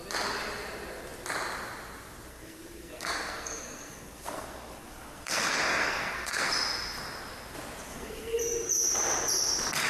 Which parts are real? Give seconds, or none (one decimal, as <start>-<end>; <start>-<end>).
0.0-2.3; 6.5-7.9; 8.4-9.9